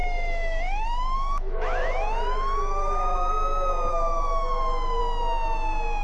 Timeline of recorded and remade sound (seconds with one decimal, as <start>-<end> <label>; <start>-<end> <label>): 0.0-3.3 remade; 3.3-3.9 recorded; 3.9-5.0 remade; 5.0-6.0 recorded